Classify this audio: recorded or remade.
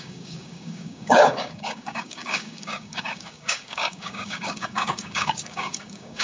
remade